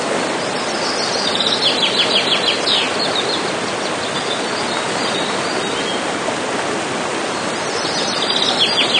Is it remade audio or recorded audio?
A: recorded